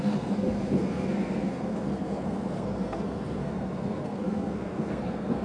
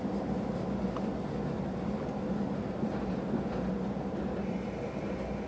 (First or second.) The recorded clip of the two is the second